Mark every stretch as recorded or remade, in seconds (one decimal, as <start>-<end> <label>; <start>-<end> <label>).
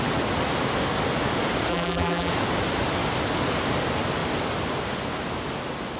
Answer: 0.0-1.7 recorded; 1.7-2.3 remade; 2.3-6.0 recorded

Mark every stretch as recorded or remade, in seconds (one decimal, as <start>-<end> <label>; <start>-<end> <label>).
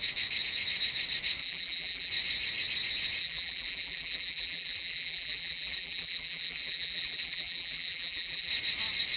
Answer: 0.0-1.4 recorded; 1.4-2.1 remade; 2.1-3.2 recorded; 3.2-8.5 remade; 8.5-9.2 recorded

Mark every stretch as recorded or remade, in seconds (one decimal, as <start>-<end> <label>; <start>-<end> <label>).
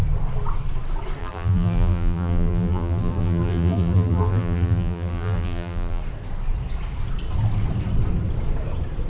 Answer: 0.0-1.2 recorded; 1.2-6.0 remade; 6.0-9.1 recorded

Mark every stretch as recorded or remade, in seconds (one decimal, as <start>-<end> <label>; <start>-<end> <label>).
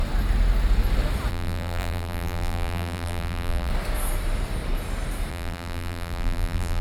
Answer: 0.0-1.3 recorded; 1.3-3.7 remade; 3.7-5.3 recorded; 5.3-6.8 remade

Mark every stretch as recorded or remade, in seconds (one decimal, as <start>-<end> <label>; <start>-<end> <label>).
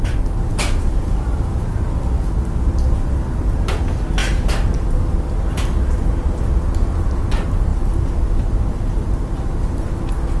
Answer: 0.0-0.5 recorded; 0.5-2.0 remade; 2.0-7.7 recorded; 7.7-9.5 remade; 9.5-10.4 recorded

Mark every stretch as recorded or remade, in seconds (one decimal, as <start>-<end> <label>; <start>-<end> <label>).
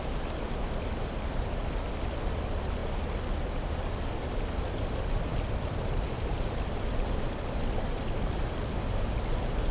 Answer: 0.0-5.3 recorded; 5.3-8.4 remade; 8.4-9.7 recorded